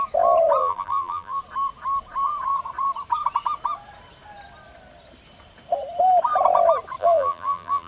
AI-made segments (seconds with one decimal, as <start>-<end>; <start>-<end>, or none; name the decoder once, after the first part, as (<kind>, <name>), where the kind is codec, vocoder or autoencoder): 0.6-1.4 (vocoder, BigVGAN v2); 7.0-7.9